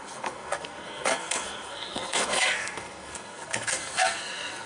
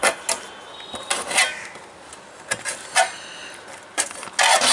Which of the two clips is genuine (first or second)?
second